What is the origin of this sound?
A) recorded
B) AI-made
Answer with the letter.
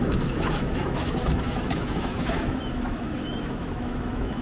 B